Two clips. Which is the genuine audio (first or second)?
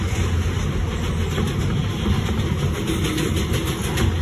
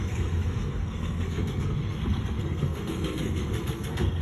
first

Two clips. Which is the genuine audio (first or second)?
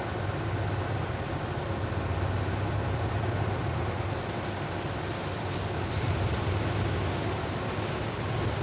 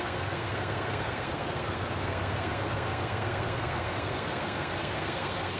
first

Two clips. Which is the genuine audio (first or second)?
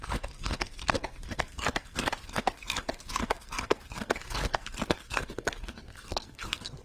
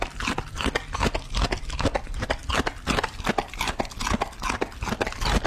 second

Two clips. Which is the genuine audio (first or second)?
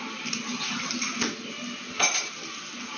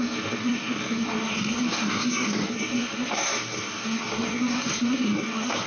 first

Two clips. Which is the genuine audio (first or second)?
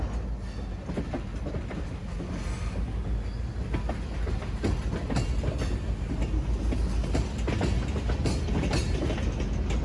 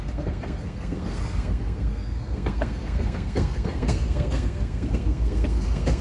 first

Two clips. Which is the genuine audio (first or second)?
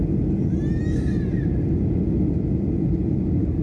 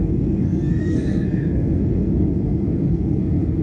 first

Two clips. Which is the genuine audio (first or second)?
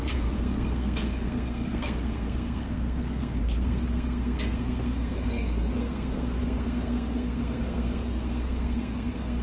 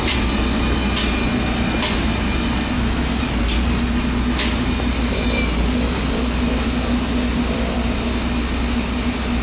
second